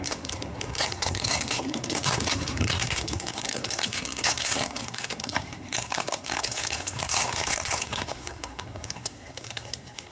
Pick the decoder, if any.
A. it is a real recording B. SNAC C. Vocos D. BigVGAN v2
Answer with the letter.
B